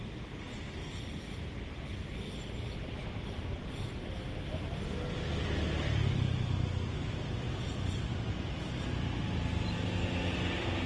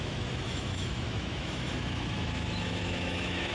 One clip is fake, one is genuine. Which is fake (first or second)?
second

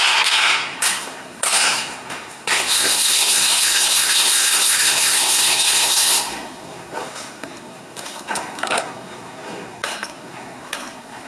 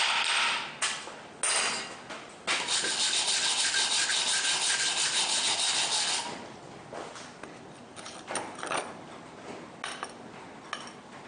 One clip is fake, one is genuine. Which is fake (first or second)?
first